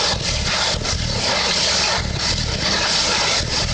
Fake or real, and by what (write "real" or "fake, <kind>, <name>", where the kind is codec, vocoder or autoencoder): real